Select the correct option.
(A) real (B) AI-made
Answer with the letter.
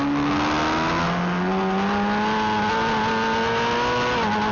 A